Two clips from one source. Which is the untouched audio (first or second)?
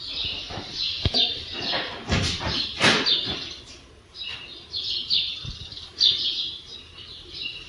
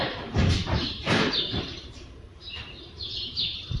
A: first